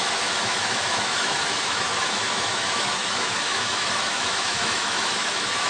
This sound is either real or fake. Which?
fake